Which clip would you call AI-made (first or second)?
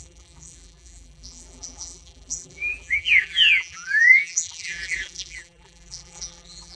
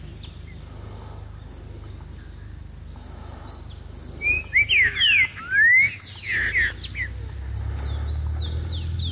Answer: first